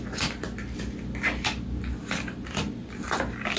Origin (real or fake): real